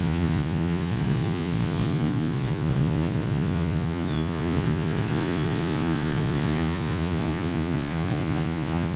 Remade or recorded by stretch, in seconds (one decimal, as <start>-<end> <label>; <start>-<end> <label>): 0.0-9.0 remade